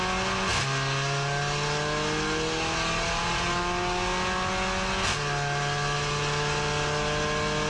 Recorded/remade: recorded